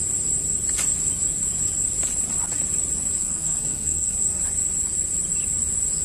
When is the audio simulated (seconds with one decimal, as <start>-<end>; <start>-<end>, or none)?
3.2-4.4